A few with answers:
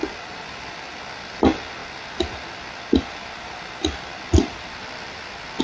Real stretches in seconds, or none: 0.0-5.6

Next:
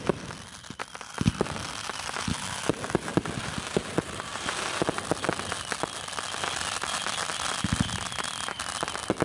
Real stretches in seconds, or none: 0.0-9.2

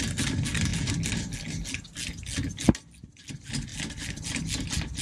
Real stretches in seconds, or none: 0.0-5.0

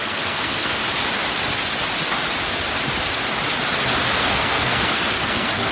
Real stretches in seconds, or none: 0.8-4.2